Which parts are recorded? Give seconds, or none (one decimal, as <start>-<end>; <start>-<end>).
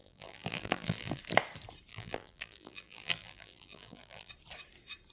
1.2-1.9; 4.3-5.1